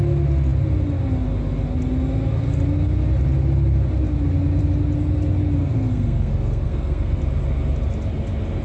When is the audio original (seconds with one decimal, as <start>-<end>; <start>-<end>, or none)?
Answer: 0.0-5.6; 7.2-8.6